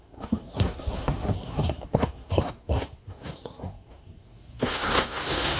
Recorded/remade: remade